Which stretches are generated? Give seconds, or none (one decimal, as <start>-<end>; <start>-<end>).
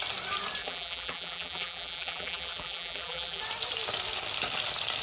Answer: 0.6-3.4